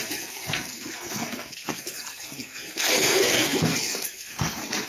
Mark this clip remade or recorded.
remade